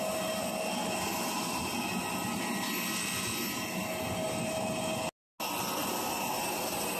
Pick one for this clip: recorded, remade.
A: recorded